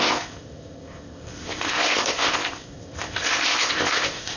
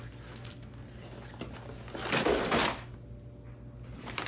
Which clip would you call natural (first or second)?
second